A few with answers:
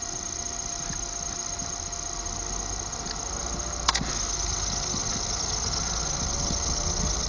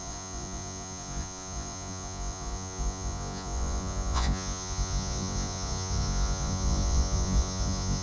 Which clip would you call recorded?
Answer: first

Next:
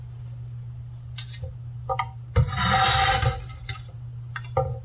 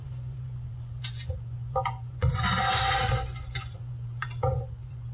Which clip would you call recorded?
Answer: first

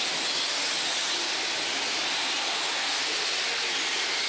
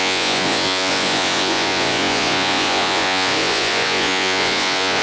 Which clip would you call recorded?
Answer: first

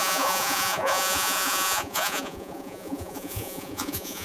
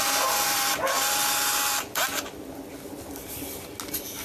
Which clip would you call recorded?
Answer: second